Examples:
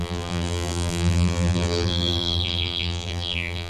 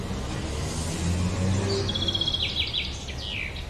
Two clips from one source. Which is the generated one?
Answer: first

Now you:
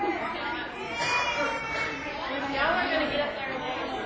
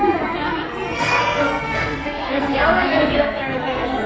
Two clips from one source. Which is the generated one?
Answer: second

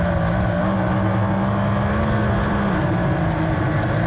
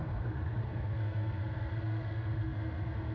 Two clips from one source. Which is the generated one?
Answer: second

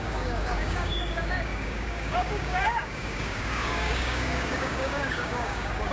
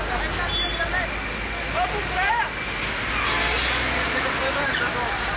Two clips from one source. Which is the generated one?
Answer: first